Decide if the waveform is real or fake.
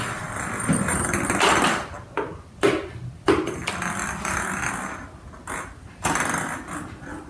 real